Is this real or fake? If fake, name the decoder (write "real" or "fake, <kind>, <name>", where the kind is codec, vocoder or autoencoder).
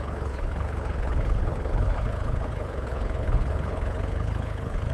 fake, codec, HILCodec